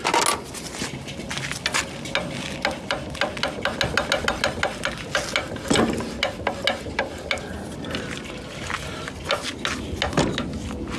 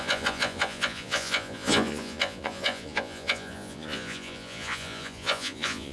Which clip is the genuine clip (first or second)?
first